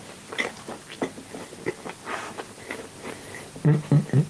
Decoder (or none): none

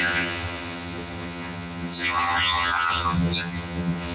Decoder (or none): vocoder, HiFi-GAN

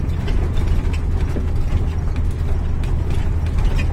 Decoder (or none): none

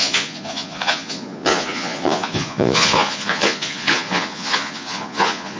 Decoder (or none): vocoder, Vocos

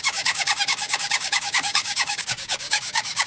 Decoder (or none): codec, DAC